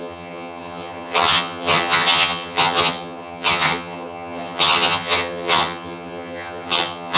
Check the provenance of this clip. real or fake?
fake